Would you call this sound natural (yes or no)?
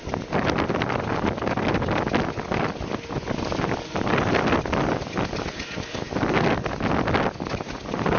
yes